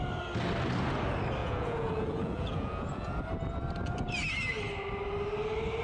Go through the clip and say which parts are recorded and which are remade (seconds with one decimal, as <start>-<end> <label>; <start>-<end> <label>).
0.0-1.4 recorded; 1.4-3.1 remade; 3.1-5.8 recorded